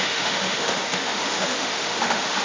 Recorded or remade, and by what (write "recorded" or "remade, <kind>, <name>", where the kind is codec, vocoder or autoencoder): remade, autoencoder, DAC-VAE